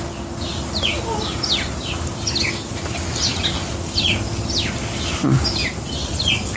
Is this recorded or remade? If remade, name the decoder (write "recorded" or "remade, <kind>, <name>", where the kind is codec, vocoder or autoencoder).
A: recorded